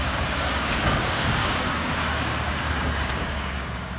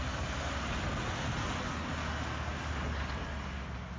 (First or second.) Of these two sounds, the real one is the second